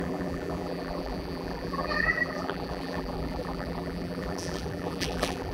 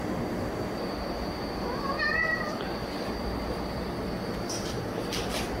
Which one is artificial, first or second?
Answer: first